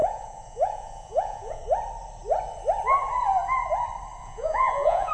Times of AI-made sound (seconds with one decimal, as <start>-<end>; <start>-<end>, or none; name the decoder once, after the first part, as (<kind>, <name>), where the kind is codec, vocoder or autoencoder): 0.0-1.6 (vocoder, Vocos); 4.2-5.1